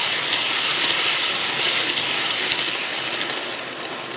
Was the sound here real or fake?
real